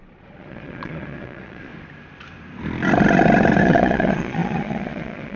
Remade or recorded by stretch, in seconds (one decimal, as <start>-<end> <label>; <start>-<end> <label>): 0.0-1.7 remade; 1.7-3.6 recorded; 3.6-5.4 remade